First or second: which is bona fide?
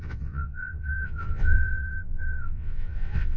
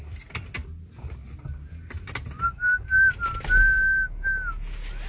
second